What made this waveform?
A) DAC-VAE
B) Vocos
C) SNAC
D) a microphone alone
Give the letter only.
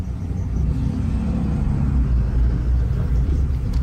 D